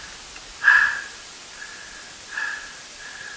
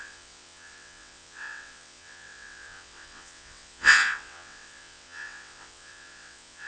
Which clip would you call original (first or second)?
first